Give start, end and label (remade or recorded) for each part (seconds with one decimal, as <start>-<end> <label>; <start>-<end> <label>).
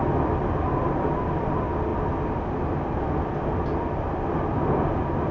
0.0-5.3 recorded